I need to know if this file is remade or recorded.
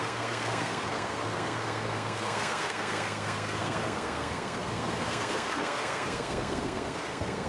remade